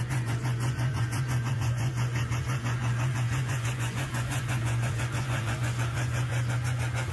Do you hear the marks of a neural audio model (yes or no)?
yes